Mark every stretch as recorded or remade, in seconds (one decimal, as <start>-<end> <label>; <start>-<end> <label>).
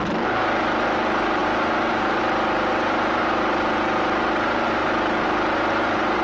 0.0-6.2 remade